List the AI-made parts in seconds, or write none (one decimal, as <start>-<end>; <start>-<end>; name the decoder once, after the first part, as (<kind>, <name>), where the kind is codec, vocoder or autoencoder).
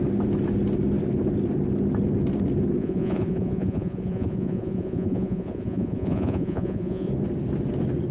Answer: 2.8-7.1 (vocoder, Vocos)